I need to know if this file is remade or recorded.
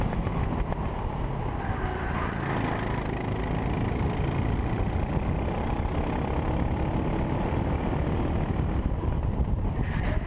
recorded